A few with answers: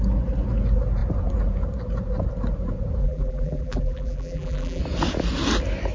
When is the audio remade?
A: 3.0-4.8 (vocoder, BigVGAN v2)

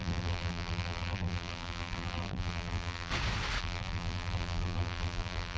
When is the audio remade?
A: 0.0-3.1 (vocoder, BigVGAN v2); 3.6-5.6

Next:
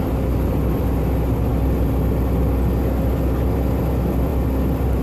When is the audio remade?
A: none

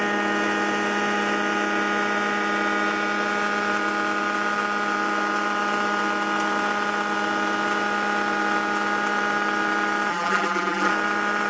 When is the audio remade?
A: 10.1-10.9 (vocoder, BigVGAN v2)

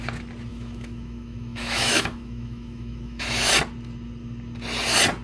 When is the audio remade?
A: 0.5-3.5 (autoencoder, DAC-VAE)

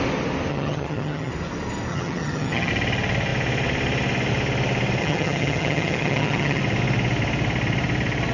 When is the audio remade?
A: 0.5-1.3 (vocoder, HiFi-GAN); 1.9-2.7; 5.0-6.6